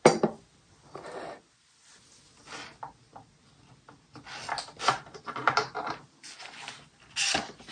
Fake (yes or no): no